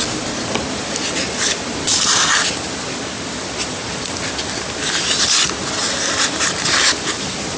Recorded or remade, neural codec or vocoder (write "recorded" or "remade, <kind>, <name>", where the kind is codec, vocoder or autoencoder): recorded